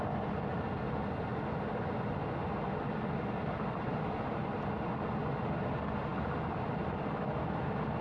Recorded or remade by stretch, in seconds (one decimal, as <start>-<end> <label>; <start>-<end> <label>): 0.0-8.0 recorded